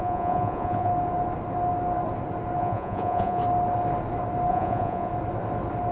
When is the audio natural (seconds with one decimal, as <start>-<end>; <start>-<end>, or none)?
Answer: 0.9-2.6; 3.4-4.5; 5.1-5.9